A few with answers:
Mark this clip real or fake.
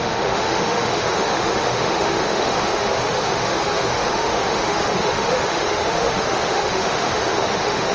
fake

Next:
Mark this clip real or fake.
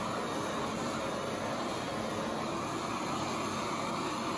real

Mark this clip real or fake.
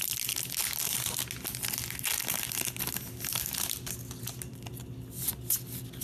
real